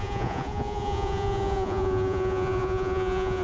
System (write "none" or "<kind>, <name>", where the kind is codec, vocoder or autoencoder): vocoder, Vocos